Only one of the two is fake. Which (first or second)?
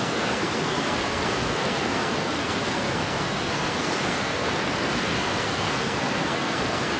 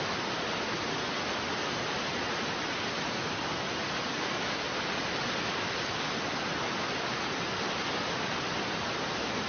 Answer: first